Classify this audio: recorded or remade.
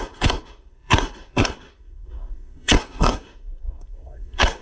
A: remade